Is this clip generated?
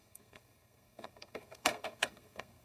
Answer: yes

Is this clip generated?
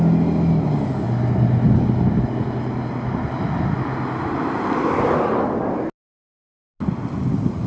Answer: no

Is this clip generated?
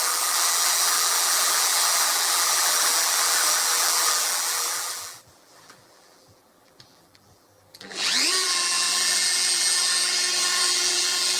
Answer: yes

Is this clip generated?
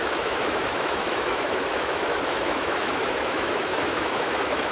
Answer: yes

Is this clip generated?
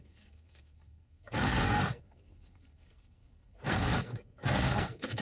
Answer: yes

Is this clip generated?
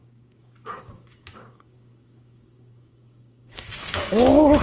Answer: yes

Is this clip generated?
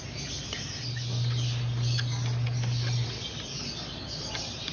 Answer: no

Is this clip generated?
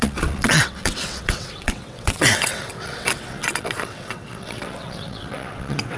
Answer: yes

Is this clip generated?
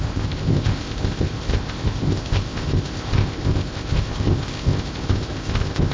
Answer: yes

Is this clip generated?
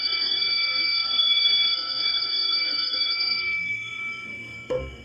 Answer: yes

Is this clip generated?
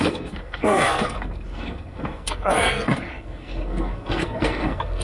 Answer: yes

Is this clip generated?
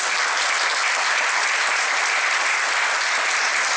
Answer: no